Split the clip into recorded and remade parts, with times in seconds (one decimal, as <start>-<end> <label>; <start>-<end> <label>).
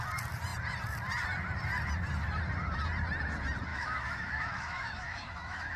0.0-3.7 recorded; 3.7-5.8 remade